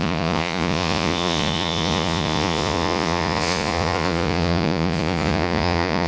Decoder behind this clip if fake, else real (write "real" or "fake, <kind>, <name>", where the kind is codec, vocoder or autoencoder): fake, vocoder, Vocos